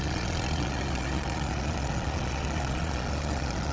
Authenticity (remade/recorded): remade